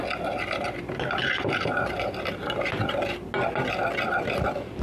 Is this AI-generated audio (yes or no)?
no